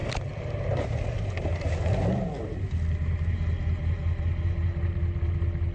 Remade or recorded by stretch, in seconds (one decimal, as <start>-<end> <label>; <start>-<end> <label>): 0.0-5.7 recorded